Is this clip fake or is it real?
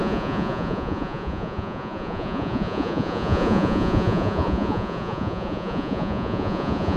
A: fake